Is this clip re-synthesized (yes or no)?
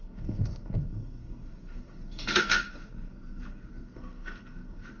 yes